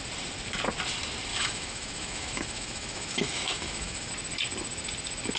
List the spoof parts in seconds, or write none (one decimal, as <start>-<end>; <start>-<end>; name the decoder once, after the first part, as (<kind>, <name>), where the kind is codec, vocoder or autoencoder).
1.3-4.1 (autoencoder, DAC-VAE)